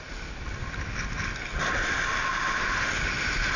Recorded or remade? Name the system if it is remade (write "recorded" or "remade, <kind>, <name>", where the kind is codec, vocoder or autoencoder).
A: recorded